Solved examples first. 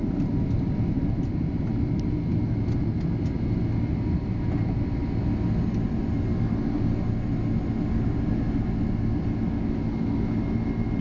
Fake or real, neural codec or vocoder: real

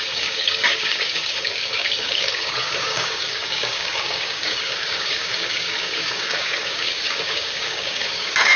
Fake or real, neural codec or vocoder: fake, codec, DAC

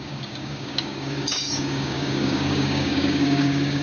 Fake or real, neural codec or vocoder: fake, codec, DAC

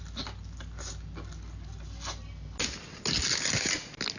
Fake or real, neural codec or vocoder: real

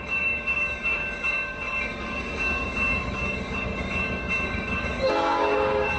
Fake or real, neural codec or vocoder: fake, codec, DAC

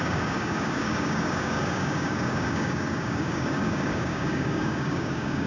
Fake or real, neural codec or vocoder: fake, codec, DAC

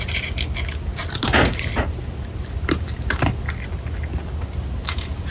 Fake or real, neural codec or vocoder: real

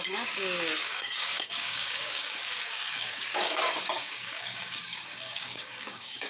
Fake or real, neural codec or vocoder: fake, codec, DAC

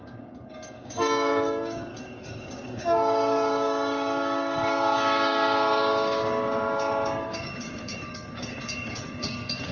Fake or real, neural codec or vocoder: fake, codec, DAC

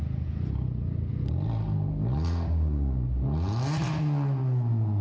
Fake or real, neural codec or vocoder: real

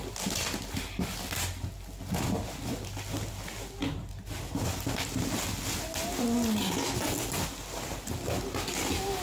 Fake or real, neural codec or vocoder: real